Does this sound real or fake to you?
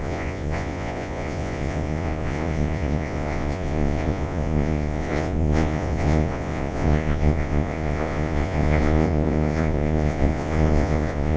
fake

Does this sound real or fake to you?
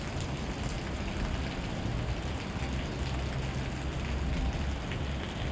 real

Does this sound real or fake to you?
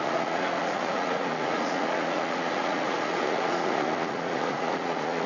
fake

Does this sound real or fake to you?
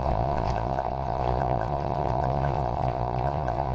fake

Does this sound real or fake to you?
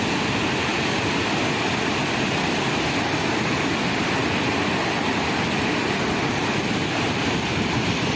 real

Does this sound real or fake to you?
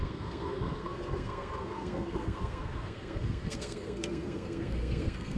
fake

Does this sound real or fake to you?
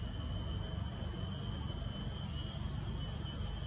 real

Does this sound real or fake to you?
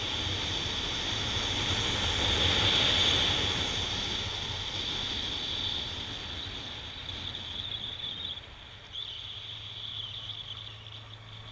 real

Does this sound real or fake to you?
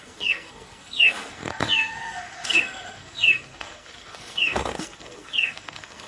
fake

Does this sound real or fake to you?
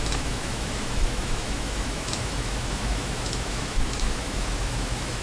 fake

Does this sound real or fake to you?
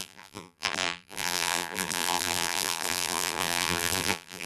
fake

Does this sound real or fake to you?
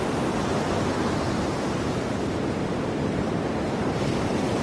fake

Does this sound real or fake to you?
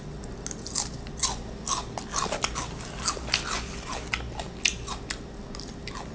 real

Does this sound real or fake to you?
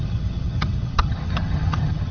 fake